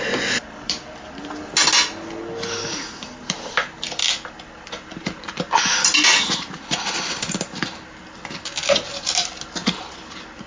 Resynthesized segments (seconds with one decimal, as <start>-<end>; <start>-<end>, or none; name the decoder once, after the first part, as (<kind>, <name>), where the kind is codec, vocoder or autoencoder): none